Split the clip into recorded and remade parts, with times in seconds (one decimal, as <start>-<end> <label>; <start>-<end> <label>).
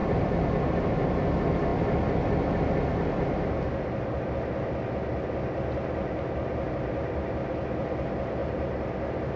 0.0-9.4 recorded